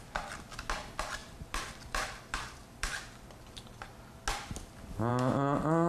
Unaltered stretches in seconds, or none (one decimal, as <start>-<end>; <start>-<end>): 0.0-1.2; 3.8-5.9